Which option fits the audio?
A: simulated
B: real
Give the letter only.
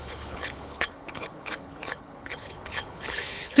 A